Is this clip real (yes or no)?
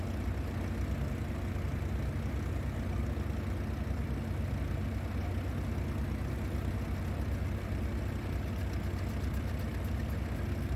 yes